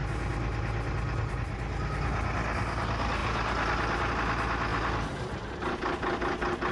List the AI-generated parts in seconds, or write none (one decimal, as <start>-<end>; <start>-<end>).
none